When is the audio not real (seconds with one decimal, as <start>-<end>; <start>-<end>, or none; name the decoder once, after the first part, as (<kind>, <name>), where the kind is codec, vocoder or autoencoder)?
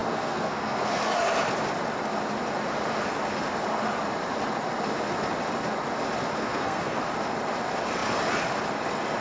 0.0-0.9 (codec, SNAC); 6.4-7.0